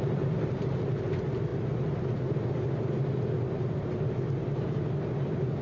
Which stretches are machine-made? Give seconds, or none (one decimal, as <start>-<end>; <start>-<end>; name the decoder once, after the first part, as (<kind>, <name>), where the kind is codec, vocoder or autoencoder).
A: none